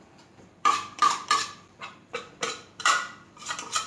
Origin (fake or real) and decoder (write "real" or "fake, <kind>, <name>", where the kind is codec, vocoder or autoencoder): fake, vocoder, BigVGAN v2